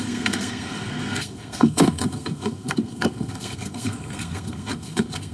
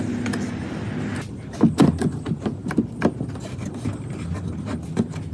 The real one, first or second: second